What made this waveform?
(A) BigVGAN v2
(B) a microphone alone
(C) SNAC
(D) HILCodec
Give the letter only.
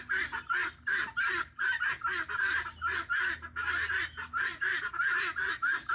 B